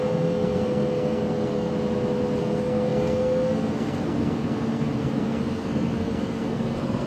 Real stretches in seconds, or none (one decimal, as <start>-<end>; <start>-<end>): 1.7-2.4